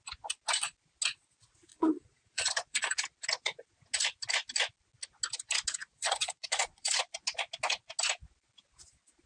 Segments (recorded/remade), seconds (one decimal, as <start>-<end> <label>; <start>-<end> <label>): 0.0-1.7 recorded; 1.7-3.0 remade; 3.0-5.8 recorded; 5.8-7.0 remade; 7.0-9.3 recorded